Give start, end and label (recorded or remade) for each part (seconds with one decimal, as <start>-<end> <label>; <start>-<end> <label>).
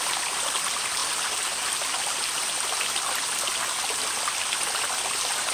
0.0-5.5 recorded